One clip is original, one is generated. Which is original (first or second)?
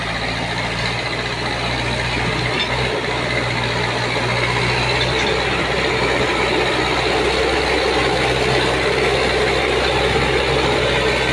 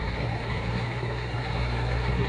first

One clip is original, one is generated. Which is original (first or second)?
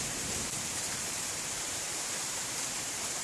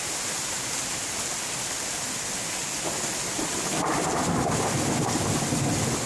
second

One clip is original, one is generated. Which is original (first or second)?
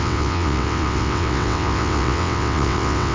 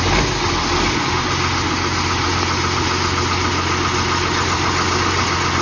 second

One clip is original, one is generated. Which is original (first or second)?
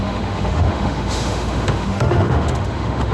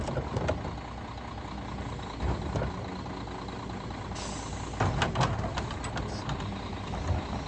second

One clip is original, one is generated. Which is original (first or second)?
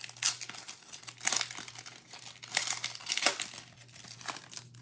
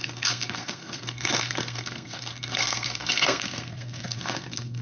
first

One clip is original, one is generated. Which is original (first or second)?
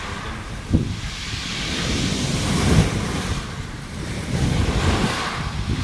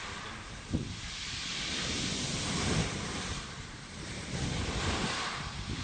first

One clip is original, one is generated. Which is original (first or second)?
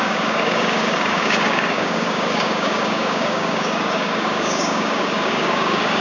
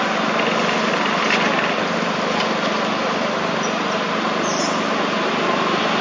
second